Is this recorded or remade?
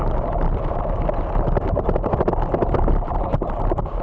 recorded